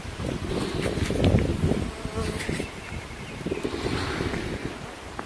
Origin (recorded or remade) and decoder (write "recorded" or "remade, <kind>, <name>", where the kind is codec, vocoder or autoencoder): recorded